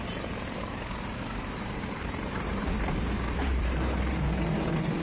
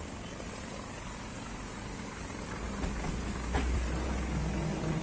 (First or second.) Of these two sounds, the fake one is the first